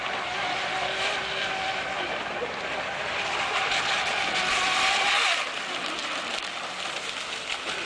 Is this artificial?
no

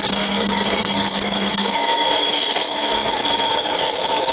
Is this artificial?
yes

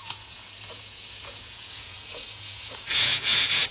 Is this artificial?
yes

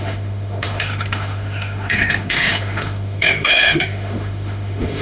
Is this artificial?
yes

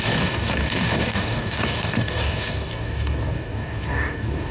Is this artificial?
yes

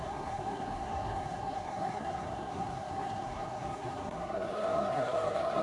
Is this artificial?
yes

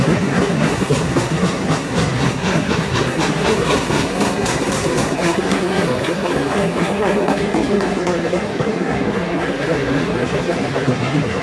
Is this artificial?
yes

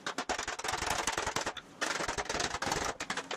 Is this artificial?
no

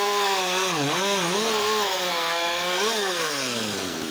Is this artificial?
yes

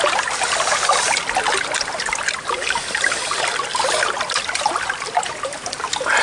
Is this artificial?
no